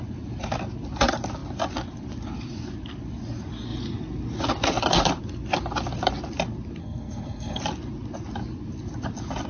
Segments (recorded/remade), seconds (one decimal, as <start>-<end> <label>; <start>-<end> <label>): 0.0-6.8 recorded; 6.8-7.6 remade; 7.6-9.5 recorded